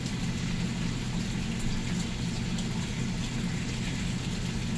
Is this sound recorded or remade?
recorded